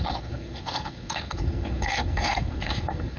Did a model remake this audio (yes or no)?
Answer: yes